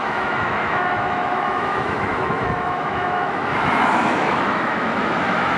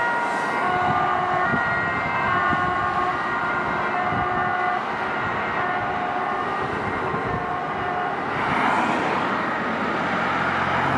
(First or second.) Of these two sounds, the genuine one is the second